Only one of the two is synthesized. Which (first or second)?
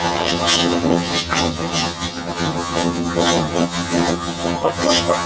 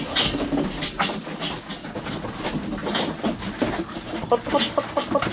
first